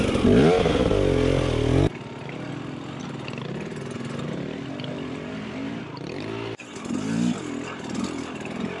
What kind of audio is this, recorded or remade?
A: recorded